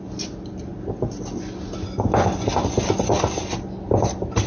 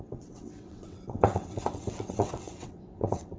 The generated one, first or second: second